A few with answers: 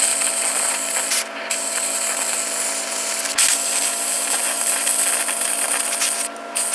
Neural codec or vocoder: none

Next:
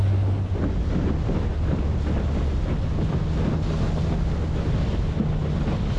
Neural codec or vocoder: none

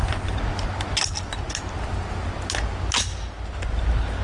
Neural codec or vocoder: none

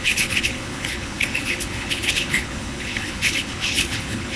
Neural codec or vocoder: codec, HILCodec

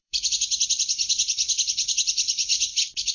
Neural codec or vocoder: codec, HILCodec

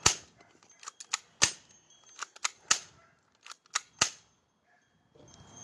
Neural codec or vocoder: none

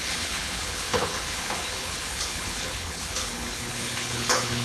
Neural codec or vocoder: codec, HILCodec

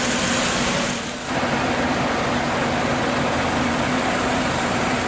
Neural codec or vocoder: none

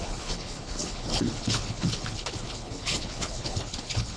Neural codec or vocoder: codec, HILCodec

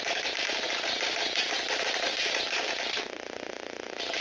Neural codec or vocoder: none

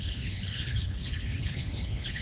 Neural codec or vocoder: codec, HILCodec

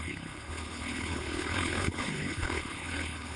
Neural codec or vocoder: codec, HILCodec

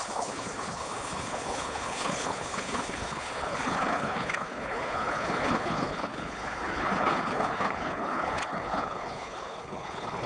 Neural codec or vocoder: codec, HILCodec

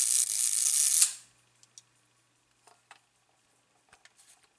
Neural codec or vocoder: none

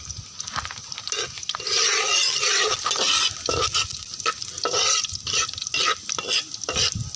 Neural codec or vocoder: none